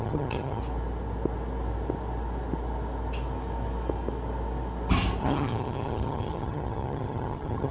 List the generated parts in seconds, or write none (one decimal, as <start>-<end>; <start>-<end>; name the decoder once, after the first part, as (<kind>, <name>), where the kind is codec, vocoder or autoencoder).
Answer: 0.0-0.6 (vocoder, HiFi-GAN); 5.2-7.7